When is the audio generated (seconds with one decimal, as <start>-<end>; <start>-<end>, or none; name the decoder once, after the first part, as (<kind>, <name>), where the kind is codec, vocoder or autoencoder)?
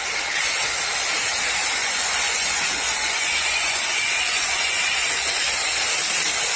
1.8-5.8 (vocoder, Vocos)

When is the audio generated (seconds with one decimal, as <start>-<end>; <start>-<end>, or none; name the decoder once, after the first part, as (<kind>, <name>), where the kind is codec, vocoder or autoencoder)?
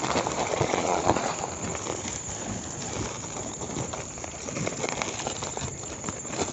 0.5-1.4 (vocoder, Vocos)